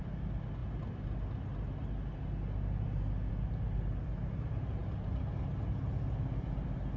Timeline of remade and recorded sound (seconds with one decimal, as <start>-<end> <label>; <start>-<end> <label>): 0.0-7.0 recorded